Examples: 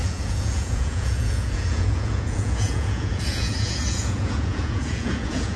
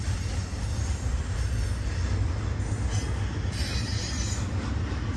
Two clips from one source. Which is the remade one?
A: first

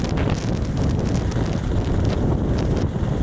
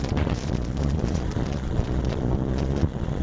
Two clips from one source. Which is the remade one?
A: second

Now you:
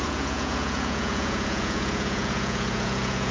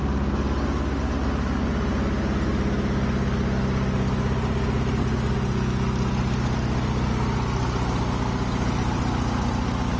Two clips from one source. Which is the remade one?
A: first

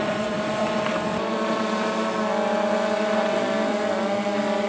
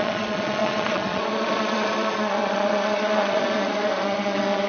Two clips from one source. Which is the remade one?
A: second